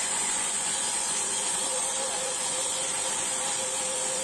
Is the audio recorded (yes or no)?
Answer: no